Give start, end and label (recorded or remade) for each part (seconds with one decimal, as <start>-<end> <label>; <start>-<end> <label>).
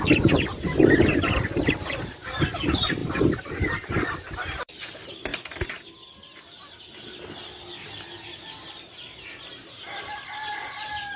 0.0-3.0 recorded; 3.0-4.7 remade; 4.7-5.3 recorded; 5.3-5.9 remade; 5.9-11.2 recorded